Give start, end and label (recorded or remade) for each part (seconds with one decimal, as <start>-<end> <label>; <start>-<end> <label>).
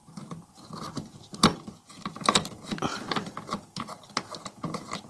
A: 0.0-0.5 remade; 0.5-1.5 recorded; 1.5-2.1 remade; 2.1-2.9 recorded; 2.9-4.2 remade; 4.2-5.1 recorded